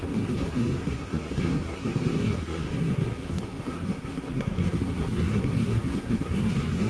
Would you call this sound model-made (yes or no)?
yes